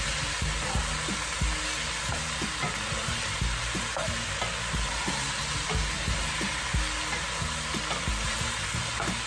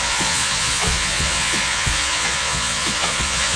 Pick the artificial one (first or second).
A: second